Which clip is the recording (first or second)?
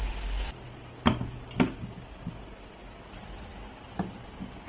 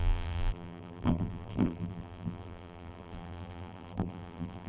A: first